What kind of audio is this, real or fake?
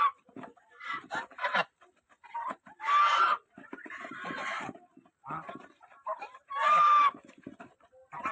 fake